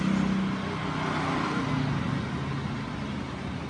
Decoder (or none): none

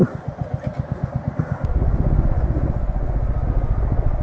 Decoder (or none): none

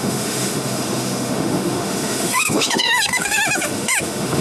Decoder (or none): autoencoder, DAC-VAE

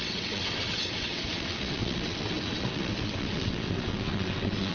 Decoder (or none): vocoder, WaveNeXt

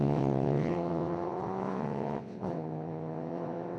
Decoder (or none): vocoder, WaveNeXt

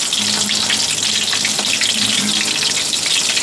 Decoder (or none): none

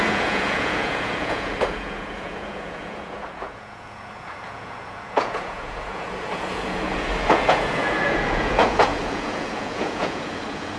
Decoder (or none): vocoder, Vocos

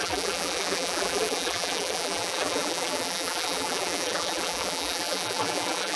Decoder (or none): vocoder, BigVGAN v2